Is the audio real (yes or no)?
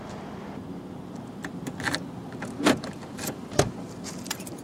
no